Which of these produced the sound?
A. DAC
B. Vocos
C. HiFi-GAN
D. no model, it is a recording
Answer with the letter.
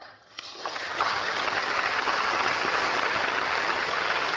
C